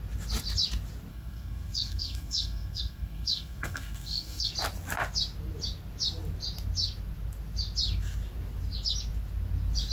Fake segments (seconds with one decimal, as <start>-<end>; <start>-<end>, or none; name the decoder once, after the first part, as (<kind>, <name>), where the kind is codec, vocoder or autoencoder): 1.1-4.5 (codec, SNAC)